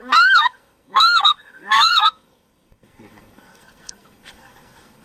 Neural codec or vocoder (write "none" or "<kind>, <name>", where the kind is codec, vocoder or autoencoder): codec, SNAC